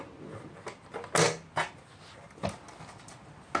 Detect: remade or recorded recorded